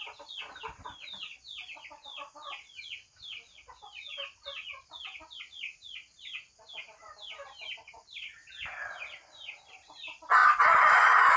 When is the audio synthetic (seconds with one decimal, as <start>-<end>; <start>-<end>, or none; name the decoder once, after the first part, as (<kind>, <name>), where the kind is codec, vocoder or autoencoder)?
10.4-11.4 (vocoder, Vocos)